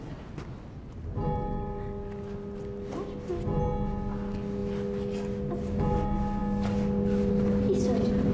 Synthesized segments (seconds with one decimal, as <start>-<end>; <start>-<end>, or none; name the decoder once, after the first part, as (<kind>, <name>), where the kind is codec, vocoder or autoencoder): none